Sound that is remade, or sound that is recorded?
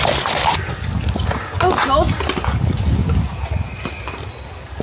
recorded